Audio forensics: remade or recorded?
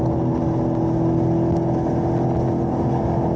recorded